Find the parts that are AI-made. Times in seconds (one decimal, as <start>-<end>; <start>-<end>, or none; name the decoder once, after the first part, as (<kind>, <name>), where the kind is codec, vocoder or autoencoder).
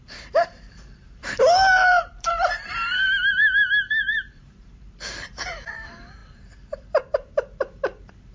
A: 0.0-8.3 (vocoder, BigVGAN v2)